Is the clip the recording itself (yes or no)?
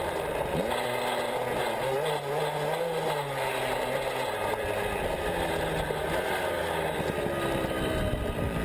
yes